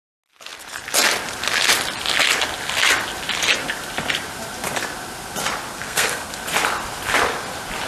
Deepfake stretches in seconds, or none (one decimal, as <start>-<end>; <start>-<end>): 5.7-6.3